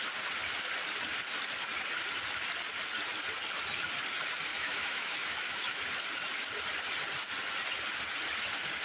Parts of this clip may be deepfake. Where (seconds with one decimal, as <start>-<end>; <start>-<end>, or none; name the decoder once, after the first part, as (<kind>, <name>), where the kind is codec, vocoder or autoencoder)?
4.5-5.8 (autoencoder, DAC-VAE)